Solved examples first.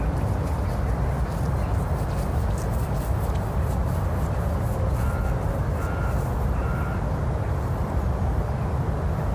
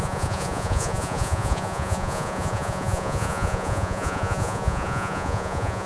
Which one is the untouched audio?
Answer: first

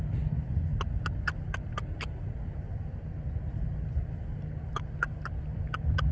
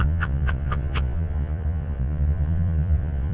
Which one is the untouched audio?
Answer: first